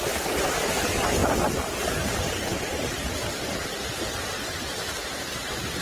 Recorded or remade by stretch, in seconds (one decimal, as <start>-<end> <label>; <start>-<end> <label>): 0.0-5.8 recorded